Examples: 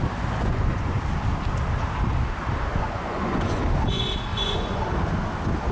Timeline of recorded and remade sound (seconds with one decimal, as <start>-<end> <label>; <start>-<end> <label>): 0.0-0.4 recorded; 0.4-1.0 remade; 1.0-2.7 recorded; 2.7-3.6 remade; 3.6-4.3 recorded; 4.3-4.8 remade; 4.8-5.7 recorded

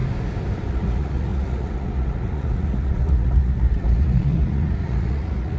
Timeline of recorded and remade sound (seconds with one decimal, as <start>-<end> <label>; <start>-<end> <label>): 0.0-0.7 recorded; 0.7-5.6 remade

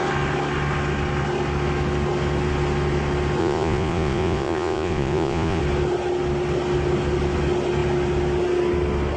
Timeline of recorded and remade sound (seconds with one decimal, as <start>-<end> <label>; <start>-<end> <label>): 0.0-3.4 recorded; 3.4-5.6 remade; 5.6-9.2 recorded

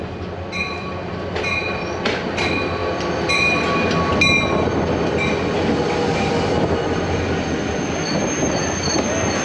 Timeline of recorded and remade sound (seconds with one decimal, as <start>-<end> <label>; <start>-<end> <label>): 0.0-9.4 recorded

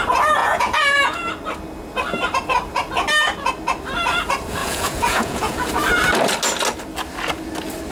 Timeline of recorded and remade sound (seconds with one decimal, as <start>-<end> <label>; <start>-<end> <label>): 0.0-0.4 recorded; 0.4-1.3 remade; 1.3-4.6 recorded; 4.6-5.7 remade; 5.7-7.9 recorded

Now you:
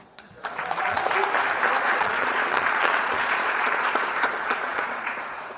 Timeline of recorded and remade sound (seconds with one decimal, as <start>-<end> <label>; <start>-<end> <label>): 0.0-1.2 remade; 1.2-1.8 recorded; 1.8-5.6 remade